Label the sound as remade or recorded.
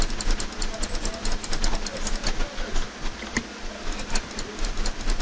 recorded